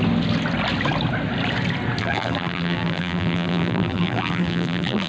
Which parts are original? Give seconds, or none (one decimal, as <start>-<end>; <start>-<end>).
0.0-2.0